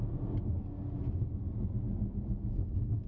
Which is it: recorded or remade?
recorded